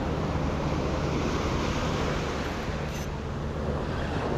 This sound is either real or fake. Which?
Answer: real